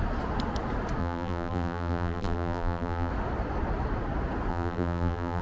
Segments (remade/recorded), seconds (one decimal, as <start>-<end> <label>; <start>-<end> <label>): 0.0-1.0 recorded; 1.0-3.1 remade; 3.1-4.5 recorded; 4.5-5.4 remade